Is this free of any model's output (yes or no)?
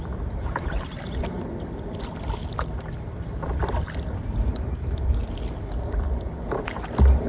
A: yes